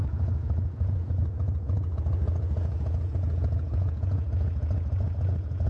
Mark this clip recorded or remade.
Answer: remade